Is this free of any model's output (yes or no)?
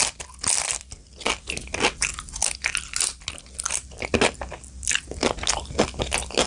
yes